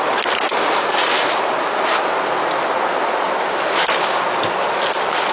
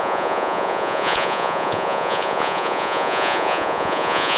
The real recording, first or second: first